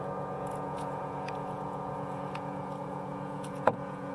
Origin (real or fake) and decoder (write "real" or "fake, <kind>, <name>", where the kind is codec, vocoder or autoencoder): fake, vocoder, Vocos